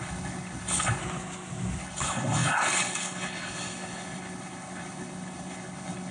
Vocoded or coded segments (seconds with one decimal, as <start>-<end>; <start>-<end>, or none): 0.0-1.0; 1.8-6.1